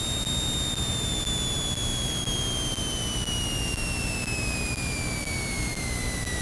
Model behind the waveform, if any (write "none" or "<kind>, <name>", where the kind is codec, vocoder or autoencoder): none